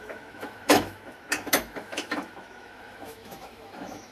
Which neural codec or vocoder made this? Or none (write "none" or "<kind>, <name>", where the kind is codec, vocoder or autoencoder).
autoencoder, DAC-VAE